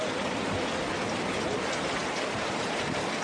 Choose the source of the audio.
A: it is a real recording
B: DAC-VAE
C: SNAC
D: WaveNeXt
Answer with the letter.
A